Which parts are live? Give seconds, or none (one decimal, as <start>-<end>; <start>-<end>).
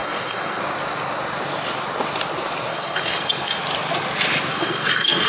0.6-2.7; 3.6-4.5